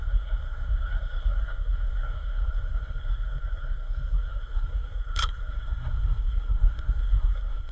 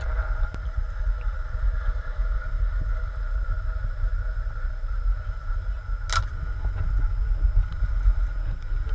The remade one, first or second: first